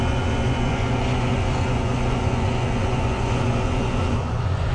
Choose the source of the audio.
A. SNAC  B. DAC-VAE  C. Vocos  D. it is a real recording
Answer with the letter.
C